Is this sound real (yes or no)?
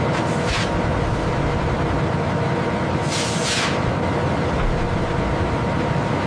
yes